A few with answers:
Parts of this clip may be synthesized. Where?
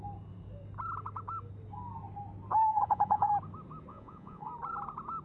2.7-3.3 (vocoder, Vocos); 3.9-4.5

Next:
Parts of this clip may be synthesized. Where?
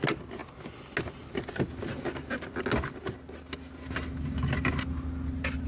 none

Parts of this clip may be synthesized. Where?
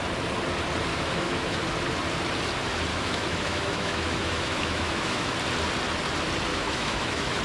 0.9-1.6 (autoencoder, DAC-VAE); 2.9-5.3; 6.5-7.4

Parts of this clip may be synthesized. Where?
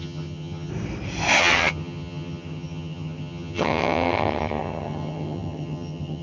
0.0-0.7 (vocoder, HiFi-GAN); 1.4-6.2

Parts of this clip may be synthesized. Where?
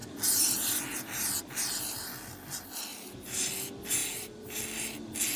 2.9-3.5 (vocoder, BigVGAN v2); 4.0-4.6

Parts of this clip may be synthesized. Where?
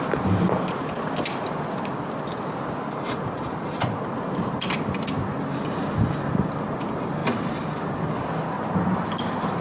none